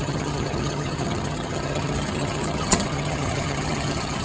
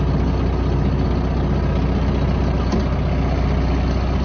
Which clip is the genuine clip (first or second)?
second